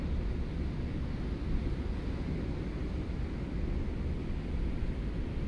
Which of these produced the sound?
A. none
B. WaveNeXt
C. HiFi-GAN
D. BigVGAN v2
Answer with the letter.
A